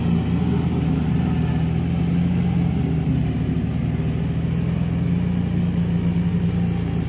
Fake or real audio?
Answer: real